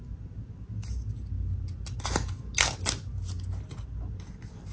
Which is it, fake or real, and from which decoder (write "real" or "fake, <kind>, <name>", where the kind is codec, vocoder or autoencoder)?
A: real